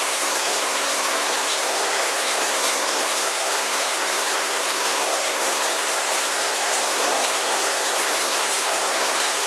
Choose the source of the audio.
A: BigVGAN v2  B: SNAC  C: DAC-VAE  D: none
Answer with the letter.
B